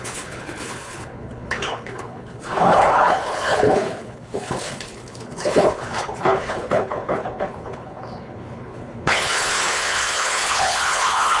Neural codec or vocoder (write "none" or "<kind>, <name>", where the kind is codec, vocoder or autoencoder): codec, HILCodec